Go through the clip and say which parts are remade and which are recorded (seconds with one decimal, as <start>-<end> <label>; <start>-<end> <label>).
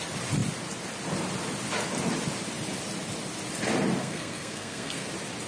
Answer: 0.0-4.0 recorded; 4.0-5.1 remade; 5.1-5.5 recorded